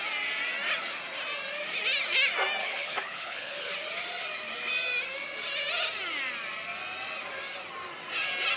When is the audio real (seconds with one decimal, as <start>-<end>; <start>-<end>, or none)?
0.0-2.6; 3.7-8.6